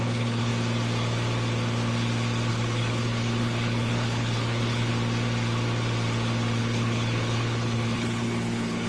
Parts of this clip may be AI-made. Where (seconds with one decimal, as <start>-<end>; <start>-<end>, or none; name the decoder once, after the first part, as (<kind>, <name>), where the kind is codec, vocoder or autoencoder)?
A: 0.0-0.5 (codec, HILCodec); 2.5-4.9; 6.6-8.9